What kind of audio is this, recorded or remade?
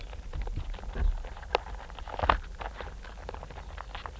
recorded